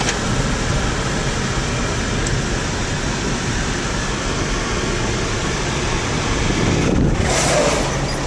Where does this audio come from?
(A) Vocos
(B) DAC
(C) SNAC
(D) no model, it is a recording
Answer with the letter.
D